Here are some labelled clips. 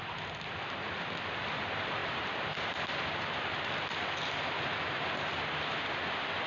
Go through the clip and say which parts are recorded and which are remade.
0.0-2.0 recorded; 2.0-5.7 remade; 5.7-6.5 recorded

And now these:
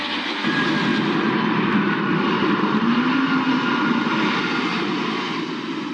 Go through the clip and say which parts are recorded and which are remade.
0.0-0.9 recorded; 0.9-4.4 remade; 4.4-5.9 recorded

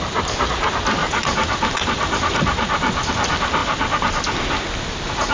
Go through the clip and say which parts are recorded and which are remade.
0.0-1.0 recorded; 1.0-3.1 remade; 3.1-3.6 recorded; 3.6-4.3 remade; 4.3-5.3 recorded

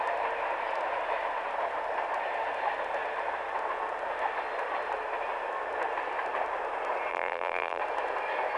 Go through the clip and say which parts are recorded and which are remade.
0.0-7.1 recorded; 7.1-7.8 remade; 7.8-8.6 recorded

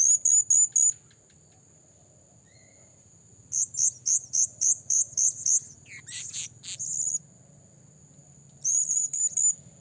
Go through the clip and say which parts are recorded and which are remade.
0.0-2.7 recorded; 2.7-6.6 remade; 6.6-8.2 recorded; 8.2-9.0 remade; 9.0-9.8 recorded